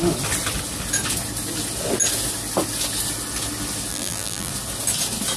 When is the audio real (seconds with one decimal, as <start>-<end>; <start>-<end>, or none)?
0.0-3.9; 4.5-5.4